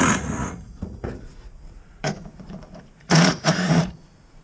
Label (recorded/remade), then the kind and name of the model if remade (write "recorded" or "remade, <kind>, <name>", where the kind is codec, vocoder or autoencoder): remade, vocoder, Vocos